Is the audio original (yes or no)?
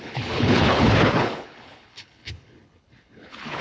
no